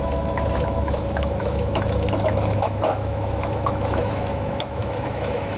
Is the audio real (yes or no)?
no